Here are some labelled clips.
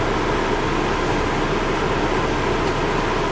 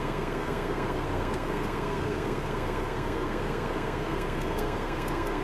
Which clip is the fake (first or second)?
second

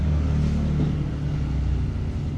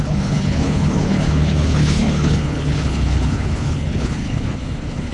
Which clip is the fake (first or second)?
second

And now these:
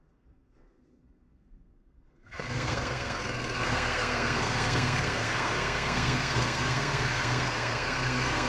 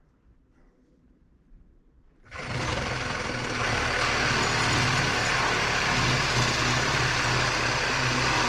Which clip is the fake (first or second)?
first